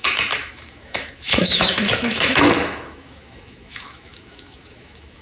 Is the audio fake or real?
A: fake